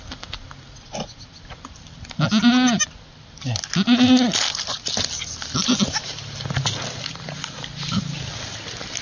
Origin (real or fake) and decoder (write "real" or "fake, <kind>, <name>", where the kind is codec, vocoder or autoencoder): real